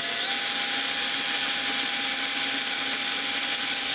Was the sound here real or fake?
real